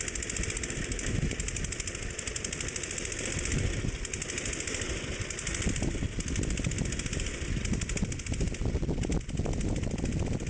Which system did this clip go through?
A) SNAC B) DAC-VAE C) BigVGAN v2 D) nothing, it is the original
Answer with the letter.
D